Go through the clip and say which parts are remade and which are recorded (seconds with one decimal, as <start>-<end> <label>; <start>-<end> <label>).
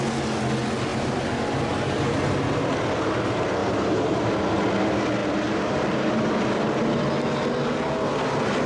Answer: 0.0-0.9 recorded; 0.9-2.7 remade; 2.7-3.6 recorded; 3.6-4.3 remade; 4.3-5.2 recorded; 5.2-6.1 remade; 6.1-8.7 recorded